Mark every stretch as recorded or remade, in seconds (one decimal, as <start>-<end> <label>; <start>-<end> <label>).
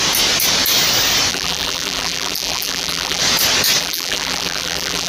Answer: 0.0-1.3 recorded; 1.3-3.2 remade; 3.2-3.8 recorded; 3.8-5.1 remade